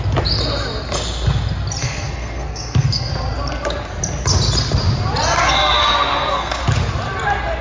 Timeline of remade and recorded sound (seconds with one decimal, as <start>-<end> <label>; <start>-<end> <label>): 0.0-1.8 recorded; 1.8-3.1 remade; 3.1-5.8 recorded; 5.8-6.6 remade; 6.6-7.6 recorded